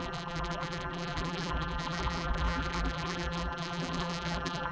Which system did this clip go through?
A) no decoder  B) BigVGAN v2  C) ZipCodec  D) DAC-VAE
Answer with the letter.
B